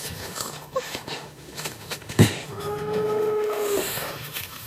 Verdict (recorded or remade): remade